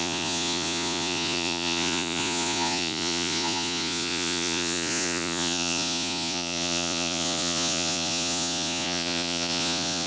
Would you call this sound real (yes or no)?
no